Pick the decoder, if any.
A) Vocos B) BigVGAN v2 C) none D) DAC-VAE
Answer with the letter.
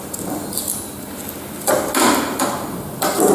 C